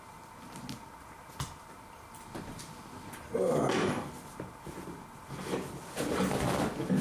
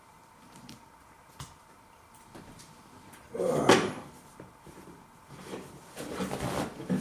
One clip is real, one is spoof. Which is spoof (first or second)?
second